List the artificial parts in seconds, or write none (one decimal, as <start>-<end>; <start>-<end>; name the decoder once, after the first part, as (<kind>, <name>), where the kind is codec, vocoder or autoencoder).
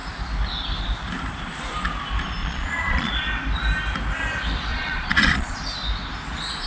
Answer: 2.4-3.1 (vocoder, Vocos); 4.7-5.6